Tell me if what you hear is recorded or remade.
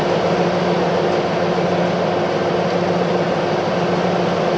recorded